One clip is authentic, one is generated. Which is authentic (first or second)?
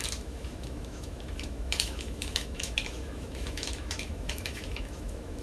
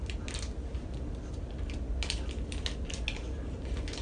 second